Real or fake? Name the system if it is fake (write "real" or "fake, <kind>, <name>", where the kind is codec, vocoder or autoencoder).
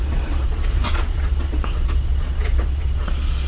fake, vocoder, Vocos